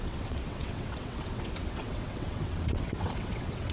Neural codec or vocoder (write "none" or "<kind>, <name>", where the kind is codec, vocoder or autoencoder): vocoder, WaveNeXt